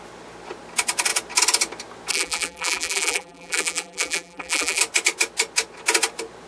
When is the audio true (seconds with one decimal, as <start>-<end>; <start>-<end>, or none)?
0.0-2.1; 4.8-6.5